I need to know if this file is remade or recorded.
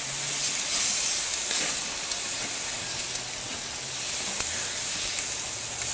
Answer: recorded